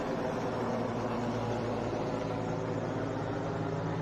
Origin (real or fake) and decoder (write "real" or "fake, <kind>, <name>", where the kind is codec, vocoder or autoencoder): real